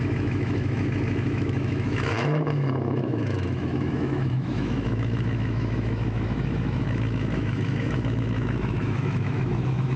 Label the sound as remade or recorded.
remade